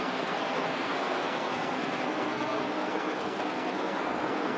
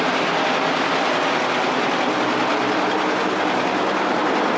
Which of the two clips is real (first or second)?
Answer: second